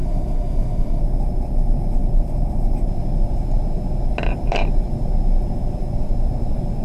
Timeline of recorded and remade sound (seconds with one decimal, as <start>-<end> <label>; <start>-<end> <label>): 0.0-1.0 remade; 1.0-6.8 recorded